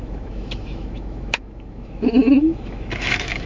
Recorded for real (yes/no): no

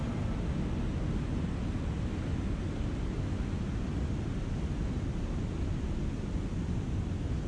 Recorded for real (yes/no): yes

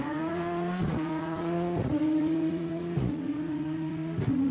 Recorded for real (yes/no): no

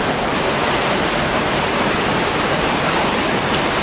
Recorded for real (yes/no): no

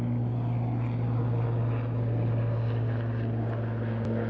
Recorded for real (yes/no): yes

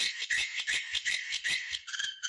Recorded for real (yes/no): no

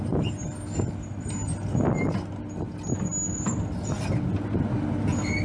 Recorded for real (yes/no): yes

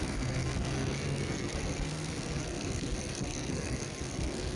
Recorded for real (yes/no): no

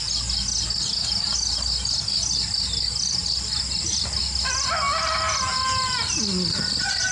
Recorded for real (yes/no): yes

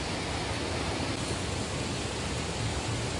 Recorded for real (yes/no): yes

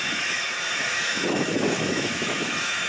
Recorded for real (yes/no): no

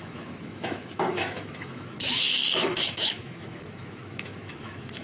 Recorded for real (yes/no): no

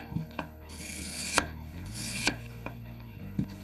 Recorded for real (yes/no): no